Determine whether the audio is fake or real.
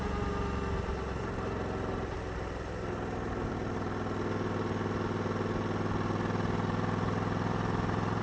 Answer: real